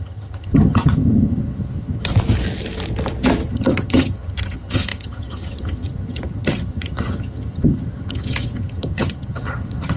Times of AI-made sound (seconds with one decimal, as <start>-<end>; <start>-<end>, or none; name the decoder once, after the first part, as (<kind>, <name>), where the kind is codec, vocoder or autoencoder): 0.0-2.1 (vocoder, HiFi-GAN); 3.5-10.0